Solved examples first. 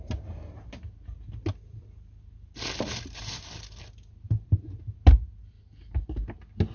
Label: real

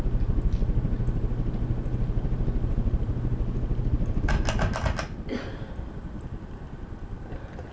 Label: real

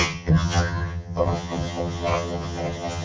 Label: fake